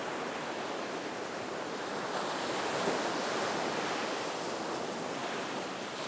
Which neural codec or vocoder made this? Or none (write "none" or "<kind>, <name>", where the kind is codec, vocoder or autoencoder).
vocoder, BigVGAN v2